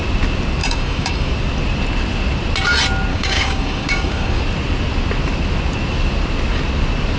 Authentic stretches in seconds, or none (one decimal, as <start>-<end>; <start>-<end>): 0.0-0.6; 1.3-3.1; 4.4-7.2